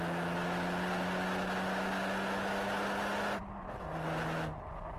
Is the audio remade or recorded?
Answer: recorded